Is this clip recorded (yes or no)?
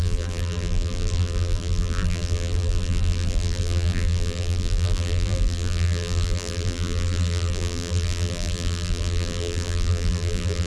no